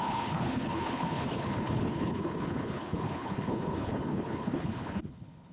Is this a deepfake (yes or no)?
yes